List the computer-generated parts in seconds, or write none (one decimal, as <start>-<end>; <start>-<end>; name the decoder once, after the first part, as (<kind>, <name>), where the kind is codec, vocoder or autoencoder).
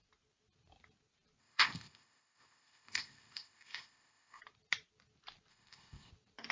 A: 1.4-4.4 (codec, ZipCodec); 5.5-6.1